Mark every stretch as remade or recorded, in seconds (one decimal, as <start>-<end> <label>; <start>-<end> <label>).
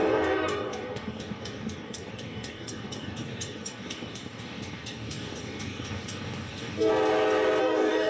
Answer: 0.0-6.9 remade; 6.9-7.6 recorded; 7.6-8.1 remade